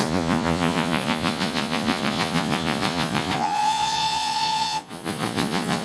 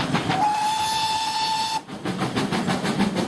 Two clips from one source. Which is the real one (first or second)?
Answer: second